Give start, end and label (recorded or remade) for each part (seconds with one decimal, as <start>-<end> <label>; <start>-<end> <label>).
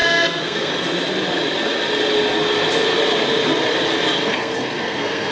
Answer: 0.0-0.7 remade; 0.7-4.2 recorded; 4.2-5.3 remade